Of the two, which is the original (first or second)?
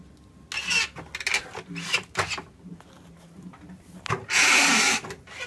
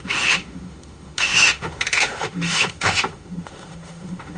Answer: first